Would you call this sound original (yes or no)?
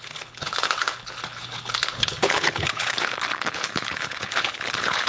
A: no